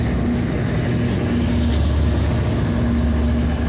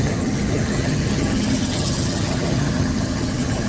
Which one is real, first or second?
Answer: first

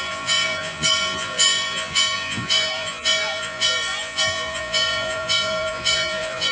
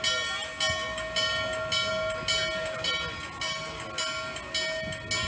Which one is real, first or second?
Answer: second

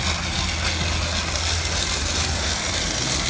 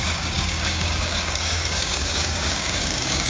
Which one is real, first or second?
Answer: first